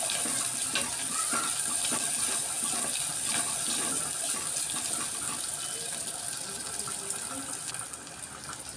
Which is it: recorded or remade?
recorded